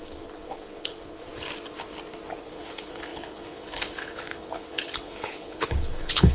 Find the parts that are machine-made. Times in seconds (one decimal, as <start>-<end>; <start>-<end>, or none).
0.0-1.3; 2.4-6.3